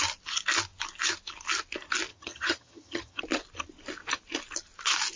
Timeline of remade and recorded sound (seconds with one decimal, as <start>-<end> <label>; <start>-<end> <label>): 0.0-2.1 recorded; 2.1-3.2 remade; 3.2-5.2 recorded